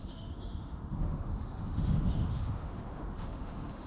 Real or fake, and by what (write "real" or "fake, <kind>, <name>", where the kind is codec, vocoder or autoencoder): fake, autoencoder, DAC-VAE